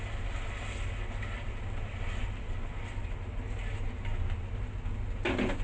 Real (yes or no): yes